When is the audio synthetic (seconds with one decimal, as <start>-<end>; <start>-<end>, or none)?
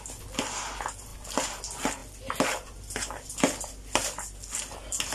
none